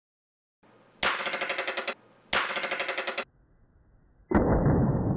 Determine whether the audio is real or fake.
real